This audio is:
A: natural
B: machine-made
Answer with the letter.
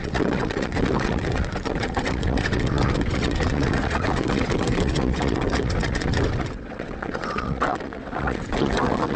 B